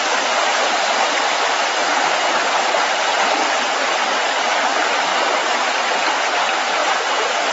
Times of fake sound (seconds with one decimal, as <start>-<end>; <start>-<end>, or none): 1.8-2.5; 6.8-7.5